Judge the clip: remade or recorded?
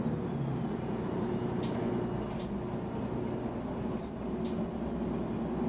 recorded